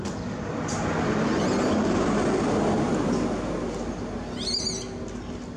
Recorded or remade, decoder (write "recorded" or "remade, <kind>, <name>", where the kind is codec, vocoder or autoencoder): recorded